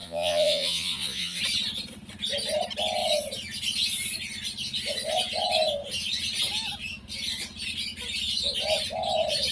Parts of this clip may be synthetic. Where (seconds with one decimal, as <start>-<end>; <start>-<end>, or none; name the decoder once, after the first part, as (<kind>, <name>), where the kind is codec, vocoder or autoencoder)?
0.0-1.4 (vocoder, Vocos)